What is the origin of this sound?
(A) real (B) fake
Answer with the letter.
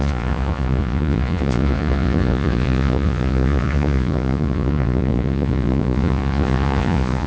B